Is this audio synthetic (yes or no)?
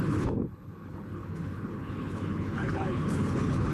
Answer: yes